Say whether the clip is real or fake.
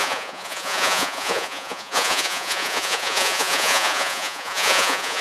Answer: fake